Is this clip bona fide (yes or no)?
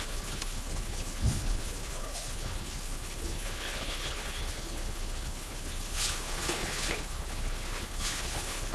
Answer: no